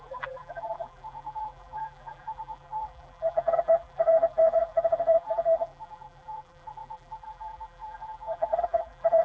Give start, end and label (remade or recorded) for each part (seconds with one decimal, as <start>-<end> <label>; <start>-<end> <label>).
0.0-9.2 remade